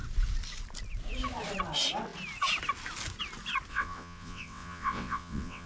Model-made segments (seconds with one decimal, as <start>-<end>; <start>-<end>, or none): 3.7-5.7